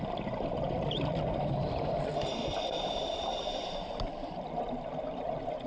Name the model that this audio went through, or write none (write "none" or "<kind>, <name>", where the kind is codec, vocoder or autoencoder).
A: vocoder, BigVGAN v2